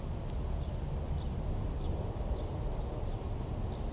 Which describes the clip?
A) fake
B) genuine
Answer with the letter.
B